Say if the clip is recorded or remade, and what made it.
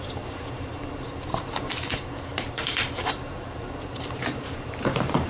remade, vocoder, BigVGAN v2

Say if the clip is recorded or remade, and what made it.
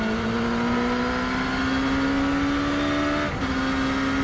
recorded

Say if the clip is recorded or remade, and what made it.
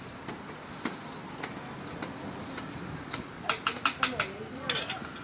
recorded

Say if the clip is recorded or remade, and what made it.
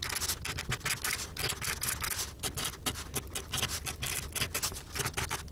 recorded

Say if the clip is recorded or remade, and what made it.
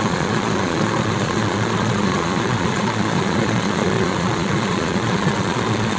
remade, vocoder, Vocos